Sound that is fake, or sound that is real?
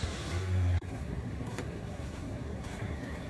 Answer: fake